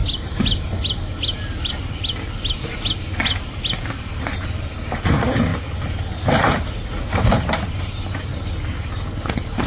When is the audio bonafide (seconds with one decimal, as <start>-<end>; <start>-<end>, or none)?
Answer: 1.7-9.7